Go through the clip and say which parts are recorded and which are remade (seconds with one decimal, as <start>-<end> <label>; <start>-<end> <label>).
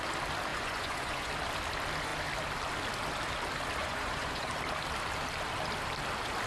0.0-0.5 recorded; 0.5-1.3 remade; 1.3-3.8 recorded; 3.8-4.5 remade; 4.5-6.5 recorded